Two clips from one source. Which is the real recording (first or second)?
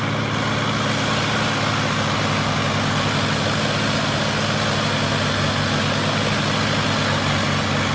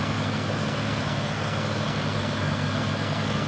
first